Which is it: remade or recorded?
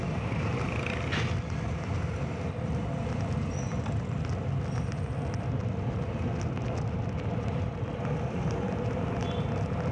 recorded